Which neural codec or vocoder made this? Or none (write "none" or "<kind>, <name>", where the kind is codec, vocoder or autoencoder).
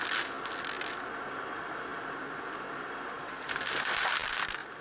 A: none